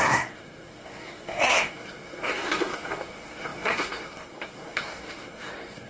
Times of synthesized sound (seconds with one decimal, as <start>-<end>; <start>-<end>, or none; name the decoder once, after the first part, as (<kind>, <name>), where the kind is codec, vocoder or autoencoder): 0.0-5.9 (codec, SNAC)